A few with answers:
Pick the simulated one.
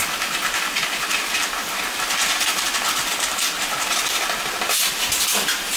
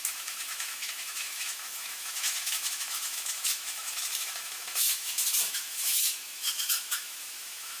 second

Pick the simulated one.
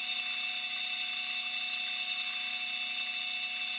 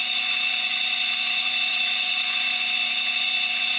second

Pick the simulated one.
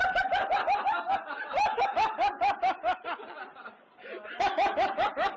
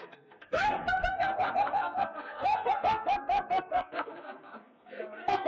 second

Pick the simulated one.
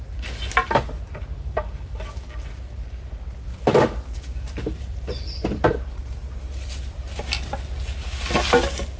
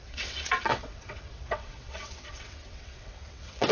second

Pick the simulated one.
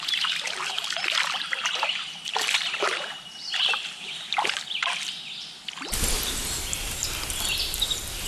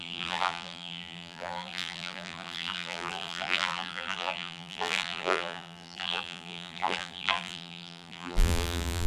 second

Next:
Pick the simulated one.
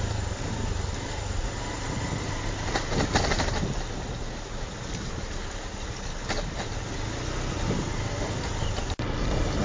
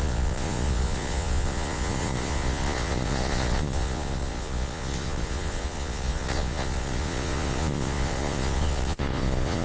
second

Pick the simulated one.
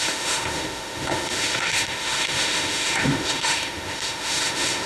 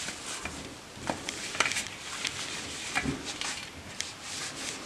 first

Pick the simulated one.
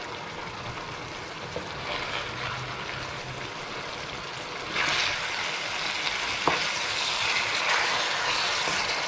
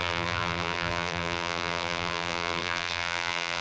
second